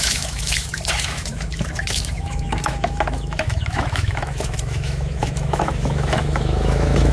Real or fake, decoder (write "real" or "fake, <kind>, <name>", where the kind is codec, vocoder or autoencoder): fake, autoencoder, DAC-VAE